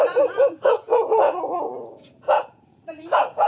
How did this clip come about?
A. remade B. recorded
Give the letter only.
A